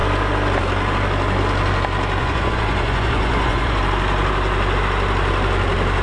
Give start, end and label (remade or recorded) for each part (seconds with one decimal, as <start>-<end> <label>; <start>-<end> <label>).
0.0-2.2 recorded; 2.2-3.8 remade; 3.8-6.0 recorded